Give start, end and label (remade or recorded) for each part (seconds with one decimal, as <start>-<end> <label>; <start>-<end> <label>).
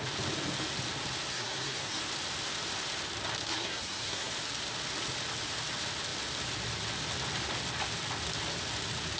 0.0-1.3 recorded; 1.3-2.0 remade; 2.0-3.5 recorded; 3.5-4.3 remade; 4.3-9.2 recorded